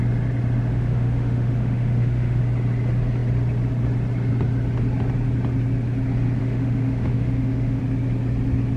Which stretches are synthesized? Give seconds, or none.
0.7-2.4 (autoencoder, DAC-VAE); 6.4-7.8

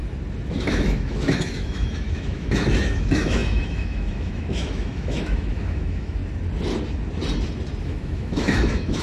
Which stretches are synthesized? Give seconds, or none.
0.5-6.2 (autoencoder, DAC-VAE); 7.8-9.0

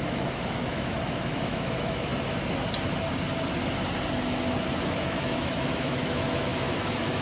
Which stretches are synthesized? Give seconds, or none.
0.0-2.1 (autoencoder, DAC-VAE); 4.8-7.2